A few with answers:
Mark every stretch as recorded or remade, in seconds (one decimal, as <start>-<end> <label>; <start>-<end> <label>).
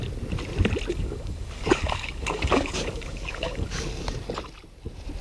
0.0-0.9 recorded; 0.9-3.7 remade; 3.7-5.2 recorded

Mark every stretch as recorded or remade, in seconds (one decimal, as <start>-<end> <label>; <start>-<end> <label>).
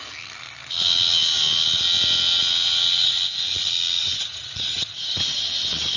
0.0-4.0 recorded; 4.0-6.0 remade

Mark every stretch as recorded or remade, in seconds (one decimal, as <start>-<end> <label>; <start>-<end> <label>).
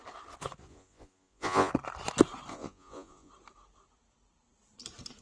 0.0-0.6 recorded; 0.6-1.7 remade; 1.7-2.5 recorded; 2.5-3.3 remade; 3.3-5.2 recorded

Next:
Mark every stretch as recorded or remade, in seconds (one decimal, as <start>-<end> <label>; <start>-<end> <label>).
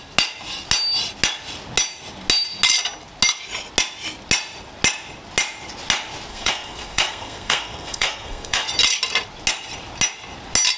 0.0-6.3 recorded; 6.3-8.7 remade; 8.7-10.8 recorded